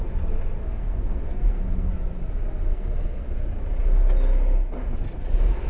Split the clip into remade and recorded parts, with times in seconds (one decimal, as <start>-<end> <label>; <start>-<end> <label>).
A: 0.0-0.6 recorded; 0.6-1.9 remade; 1.9-2.7 recorded; 2.7-3.3 remade; 3.3-5.7 recorded